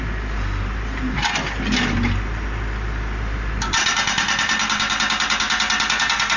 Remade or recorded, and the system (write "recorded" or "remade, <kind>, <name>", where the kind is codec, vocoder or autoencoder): recorded